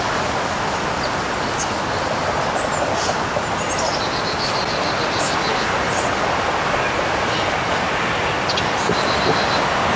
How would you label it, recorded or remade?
recorded